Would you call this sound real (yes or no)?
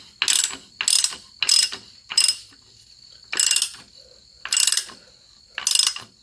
yes